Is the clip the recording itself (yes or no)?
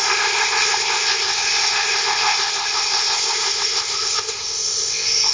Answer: no